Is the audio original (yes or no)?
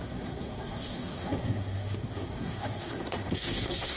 no